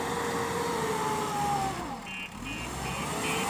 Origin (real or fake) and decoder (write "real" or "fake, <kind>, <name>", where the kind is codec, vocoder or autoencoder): real